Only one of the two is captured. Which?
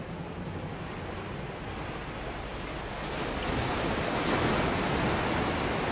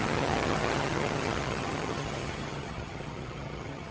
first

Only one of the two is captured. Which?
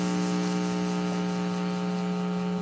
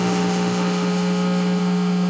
first